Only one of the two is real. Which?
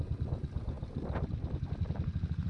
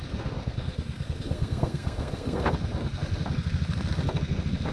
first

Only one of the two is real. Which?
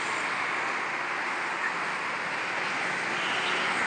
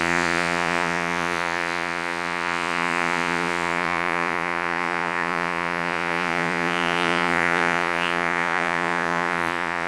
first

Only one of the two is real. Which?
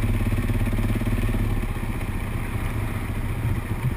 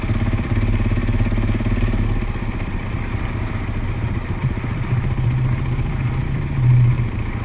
first